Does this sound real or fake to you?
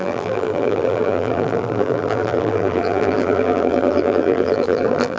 fake